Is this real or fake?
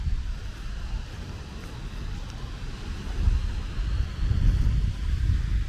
real